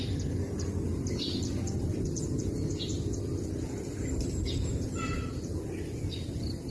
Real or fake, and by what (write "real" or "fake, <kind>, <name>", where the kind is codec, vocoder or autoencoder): real